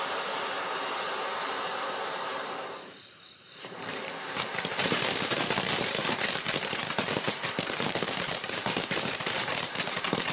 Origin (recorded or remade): remade